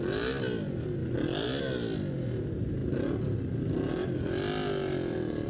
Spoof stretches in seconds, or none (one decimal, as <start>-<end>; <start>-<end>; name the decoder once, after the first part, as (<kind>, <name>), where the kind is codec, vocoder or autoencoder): none